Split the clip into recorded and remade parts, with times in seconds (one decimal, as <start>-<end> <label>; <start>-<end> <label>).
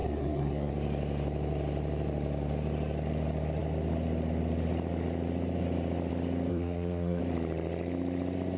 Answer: 0.0-0.7 remade; 0.7-6.5 recorded; 6.5-7.2 remade; 7.2-8.6 recorded